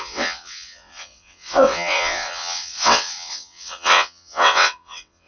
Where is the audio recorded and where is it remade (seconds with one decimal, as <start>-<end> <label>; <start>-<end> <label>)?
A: 0.0-5.3 remade